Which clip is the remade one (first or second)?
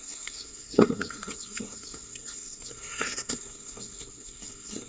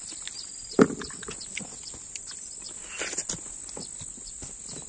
first